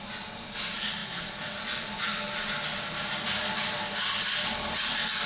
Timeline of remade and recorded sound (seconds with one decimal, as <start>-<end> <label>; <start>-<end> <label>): 0.0-5.3 recorded